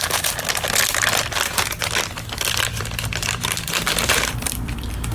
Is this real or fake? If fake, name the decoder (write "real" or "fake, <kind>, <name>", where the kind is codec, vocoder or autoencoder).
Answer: fake, vocoder, BigVGAN v2